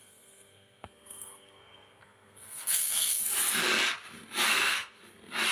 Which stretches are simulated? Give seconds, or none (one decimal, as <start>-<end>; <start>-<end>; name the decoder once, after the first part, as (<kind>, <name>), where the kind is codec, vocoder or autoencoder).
0.0-3.2 (codec, SNAC); 4.5-5.0